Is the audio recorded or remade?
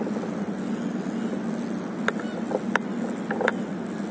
recorded